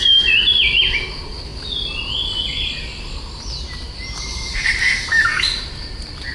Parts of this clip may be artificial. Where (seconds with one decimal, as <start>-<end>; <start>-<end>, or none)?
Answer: none